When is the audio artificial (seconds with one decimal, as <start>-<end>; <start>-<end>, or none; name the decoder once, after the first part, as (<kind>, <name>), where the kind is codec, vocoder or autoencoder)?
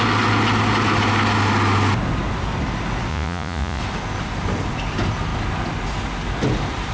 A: 3.1-3.8 (vocoder, Vocos)